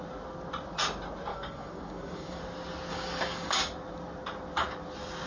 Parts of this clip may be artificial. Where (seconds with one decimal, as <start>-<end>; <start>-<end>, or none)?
1.3-2.4; 2.9-3.5